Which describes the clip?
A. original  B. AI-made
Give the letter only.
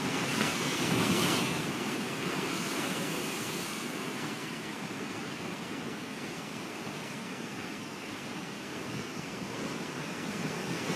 B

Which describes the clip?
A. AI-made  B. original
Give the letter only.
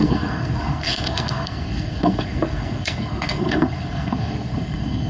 A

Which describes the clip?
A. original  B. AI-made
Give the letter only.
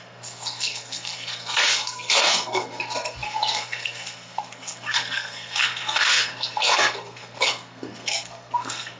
B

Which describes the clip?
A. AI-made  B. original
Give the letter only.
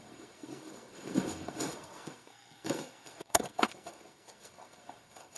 A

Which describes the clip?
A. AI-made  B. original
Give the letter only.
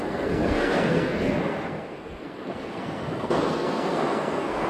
A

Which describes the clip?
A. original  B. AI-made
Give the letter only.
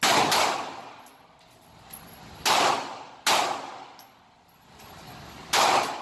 A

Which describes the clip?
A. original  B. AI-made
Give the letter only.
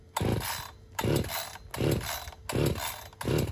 A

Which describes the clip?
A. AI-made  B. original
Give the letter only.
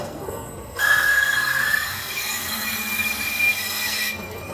A